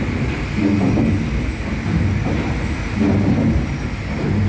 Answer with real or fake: real